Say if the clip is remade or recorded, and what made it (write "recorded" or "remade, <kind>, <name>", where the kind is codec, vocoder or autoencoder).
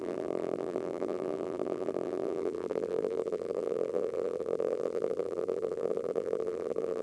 remade, vocoder, BigVGAN v2